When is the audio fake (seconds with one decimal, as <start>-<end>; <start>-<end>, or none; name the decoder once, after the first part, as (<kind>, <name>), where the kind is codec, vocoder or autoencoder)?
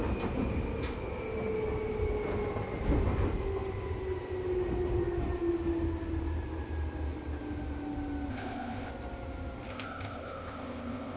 8.3-8.9 (codec, ZipCodec); 9.7-11.2